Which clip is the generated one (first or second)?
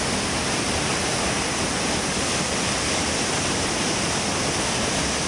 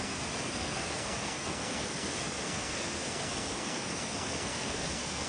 second